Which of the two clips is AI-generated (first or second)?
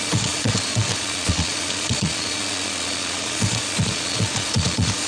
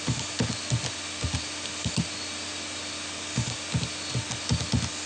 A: first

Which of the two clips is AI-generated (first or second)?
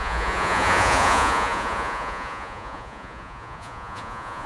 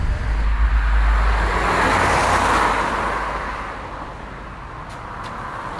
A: first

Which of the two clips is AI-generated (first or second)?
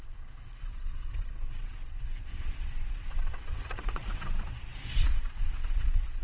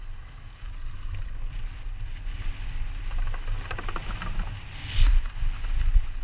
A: first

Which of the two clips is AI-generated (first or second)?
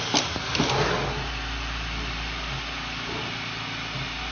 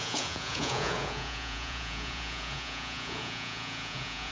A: second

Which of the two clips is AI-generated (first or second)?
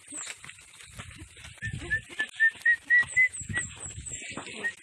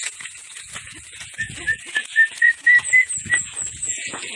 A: second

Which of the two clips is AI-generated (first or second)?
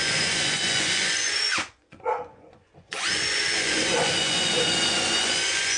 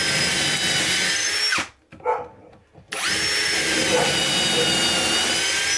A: first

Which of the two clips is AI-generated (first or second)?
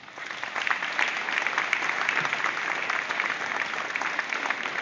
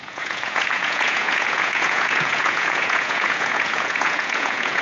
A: second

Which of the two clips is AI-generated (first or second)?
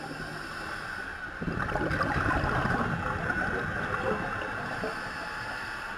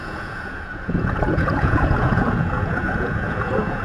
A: second